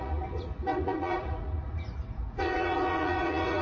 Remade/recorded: remade